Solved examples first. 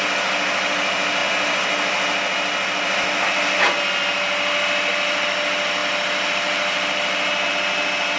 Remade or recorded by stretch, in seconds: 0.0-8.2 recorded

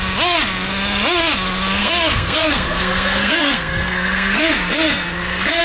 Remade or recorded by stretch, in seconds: 0.0-1.8 recorded; 1.8-5.6 remade

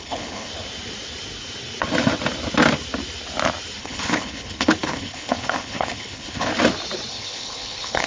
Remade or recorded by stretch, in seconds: 0.0-0.5 remade; 0.5-3.8 recorded; 3.8-6.5 remade; 6.5-7.1 recorded; 7.1-8.1 remade

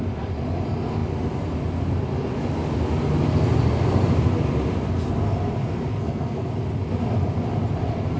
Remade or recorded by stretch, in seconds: 0.0-5.9 recorded; 5.9-6.5 remade; 6.5-8.2 recorded

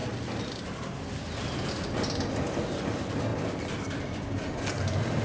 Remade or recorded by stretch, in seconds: 0.0-5.2 recorded